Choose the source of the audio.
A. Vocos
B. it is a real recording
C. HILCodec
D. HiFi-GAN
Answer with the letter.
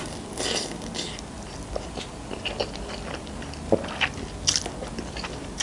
B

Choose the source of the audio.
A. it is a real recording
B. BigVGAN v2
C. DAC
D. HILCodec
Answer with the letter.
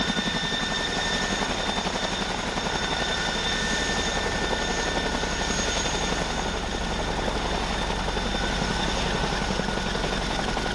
A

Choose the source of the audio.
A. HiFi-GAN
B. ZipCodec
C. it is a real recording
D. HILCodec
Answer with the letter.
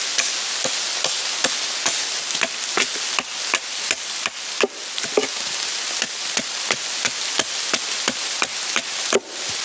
C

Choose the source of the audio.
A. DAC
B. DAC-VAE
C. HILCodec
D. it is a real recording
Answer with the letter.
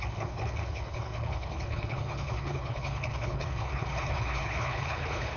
C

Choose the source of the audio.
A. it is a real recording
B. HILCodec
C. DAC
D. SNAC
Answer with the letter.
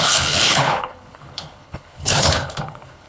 B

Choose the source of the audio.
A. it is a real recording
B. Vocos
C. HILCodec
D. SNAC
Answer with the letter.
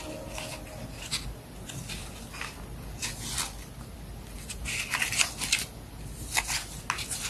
A